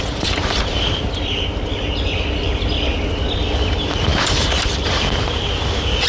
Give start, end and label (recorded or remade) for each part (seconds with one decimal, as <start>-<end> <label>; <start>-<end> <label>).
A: 0.0-4.1 recorded; 4.1-5.4 remade; 5.4-6.1 recorded